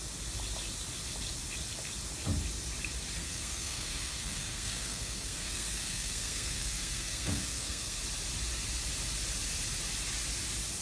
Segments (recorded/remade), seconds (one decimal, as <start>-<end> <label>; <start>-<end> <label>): 0.0-3.2 recorded; 3.2-8.0 remade; 8.0-10.8 recorded